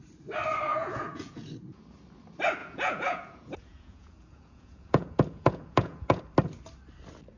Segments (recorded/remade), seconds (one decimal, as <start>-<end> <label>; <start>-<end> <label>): 0.0-0.7 recorded; 0.7-1.8 remade; 1.8-2.6 recorded; 2.6-6.2 remade; 6.2-7.4 recorded